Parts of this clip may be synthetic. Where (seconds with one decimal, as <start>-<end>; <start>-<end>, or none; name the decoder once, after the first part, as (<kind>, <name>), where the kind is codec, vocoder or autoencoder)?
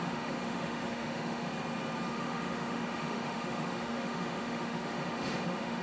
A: 0.0-1.5 (autoencoder, DAC-VAE); 2.1-5.8